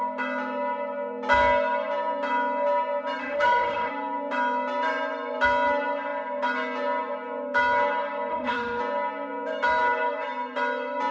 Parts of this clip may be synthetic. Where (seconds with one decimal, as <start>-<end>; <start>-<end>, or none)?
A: 3.2-3.9; 8.3-8.8